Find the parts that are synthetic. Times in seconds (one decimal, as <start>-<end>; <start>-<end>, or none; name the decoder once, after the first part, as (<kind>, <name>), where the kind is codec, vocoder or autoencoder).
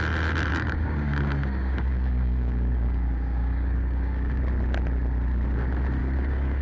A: 0.5-4.4 (codec, DAC); 6.0-6.6